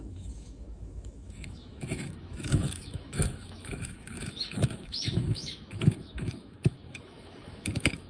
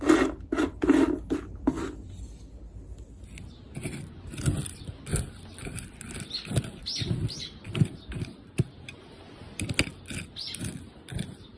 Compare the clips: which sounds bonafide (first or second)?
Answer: second